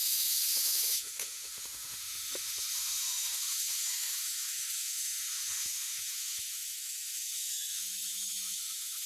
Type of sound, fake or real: fake